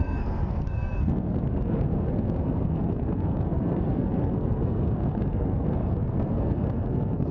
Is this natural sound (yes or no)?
no